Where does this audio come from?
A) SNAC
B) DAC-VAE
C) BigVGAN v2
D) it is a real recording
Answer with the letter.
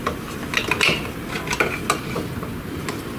D